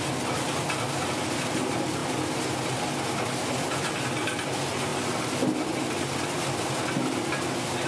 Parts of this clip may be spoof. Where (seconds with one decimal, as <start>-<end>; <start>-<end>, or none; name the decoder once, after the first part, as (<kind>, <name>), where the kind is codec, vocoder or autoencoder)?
none